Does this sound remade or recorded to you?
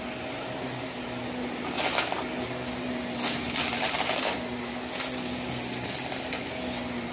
recorded